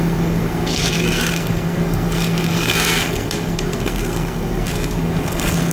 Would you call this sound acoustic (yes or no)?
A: no